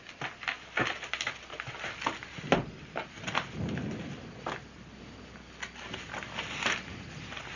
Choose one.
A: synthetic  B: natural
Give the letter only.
B